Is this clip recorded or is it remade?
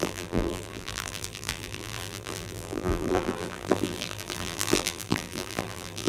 remade